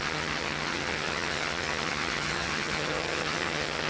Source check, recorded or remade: remade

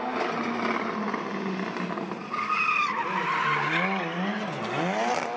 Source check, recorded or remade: recorded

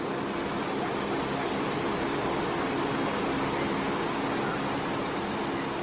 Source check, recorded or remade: recorded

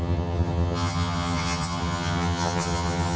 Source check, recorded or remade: remade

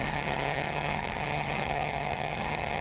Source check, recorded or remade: remade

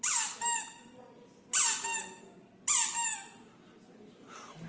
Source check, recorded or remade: recorded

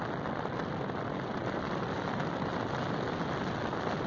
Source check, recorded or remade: recorded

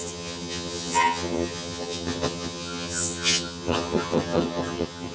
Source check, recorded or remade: remade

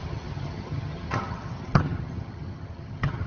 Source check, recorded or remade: remade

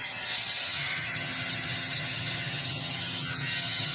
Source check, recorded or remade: remade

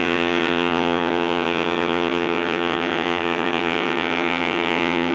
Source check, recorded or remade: remade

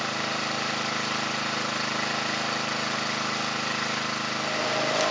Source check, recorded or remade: recorded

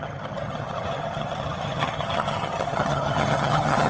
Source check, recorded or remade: remade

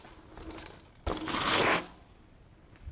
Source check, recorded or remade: recorded